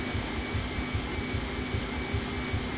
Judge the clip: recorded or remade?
recorded